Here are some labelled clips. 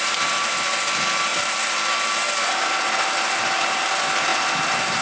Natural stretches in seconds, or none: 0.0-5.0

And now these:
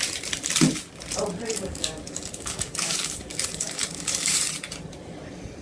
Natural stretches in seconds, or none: 0.0-1.5; 4.4-5.6